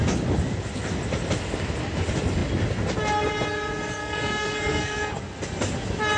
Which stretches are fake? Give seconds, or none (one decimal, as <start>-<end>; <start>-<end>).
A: 4.0-5.2